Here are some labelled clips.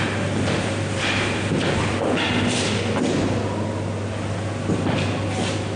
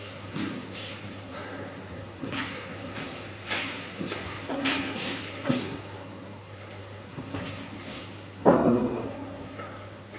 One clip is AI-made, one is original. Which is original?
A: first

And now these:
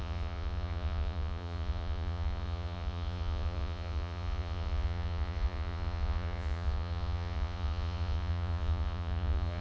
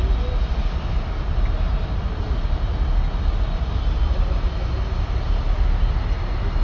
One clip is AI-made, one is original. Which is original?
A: second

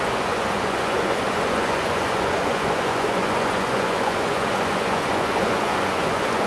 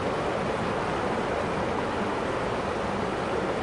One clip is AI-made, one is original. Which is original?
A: second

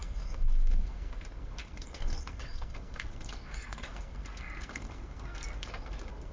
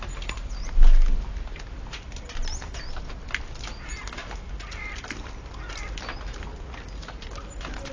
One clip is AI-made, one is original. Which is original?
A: second